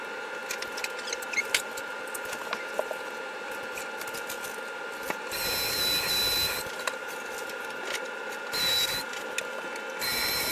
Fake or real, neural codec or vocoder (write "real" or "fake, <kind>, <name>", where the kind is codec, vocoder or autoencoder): real